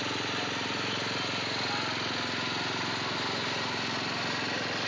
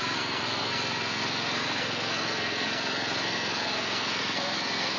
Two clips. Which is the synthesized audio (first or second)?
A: second